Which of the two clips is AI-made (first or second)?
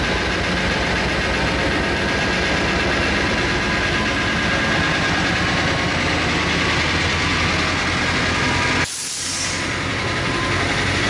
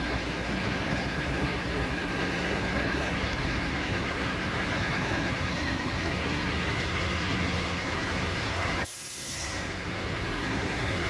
second